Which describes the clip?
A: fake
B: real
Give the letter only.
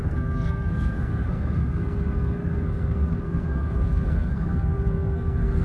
A